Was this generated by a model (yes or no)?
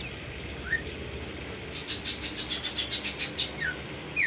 no